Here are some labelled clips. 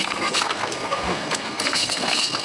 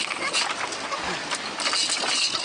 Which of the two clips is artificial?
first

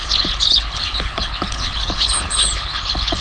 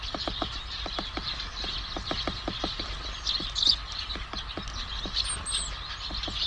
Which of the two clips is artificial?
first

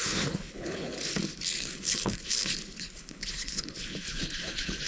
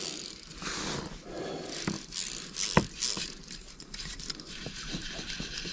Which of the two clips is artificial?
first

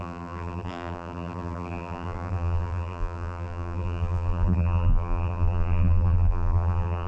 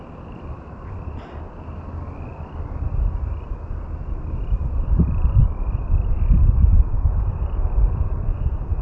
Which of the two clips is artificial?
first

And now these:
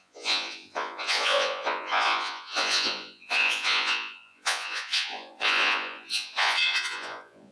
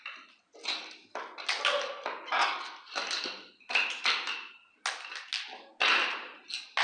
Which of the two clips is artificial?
first